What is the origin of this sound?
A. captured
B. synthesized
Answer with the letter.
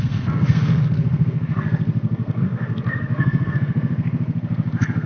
B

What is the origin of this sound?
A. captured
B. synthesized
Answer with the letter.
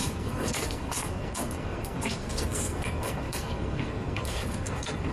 B